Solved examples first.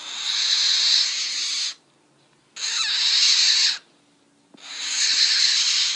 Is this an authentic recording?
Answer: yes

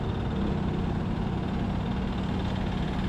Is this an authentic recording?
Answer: yes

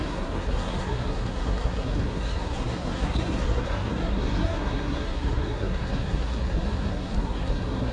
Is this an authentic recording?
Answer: no